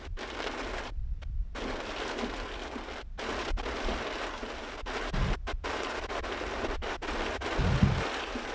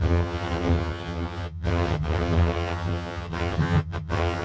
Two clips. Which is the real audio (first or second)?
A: first